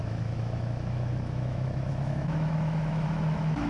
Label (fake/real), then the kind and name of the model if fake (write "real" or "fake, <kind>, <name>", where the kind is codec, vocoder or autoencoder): fake, autoencoder, DAC-VAE